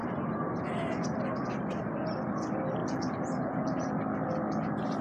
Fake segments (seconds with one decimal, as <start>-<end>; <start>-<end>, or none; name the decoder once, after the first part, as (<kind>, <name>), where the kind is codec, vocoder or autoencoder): 2.8-3.9 (vocoder, BigVGAN v2)